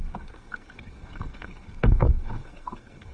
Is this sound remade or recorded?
remade